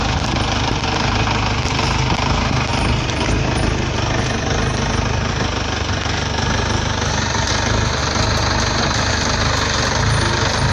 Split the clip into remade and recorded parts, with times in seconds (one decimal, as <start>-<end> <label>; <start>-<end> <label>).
0.0-10.7 recorded